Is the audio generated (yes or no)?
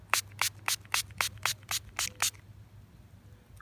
no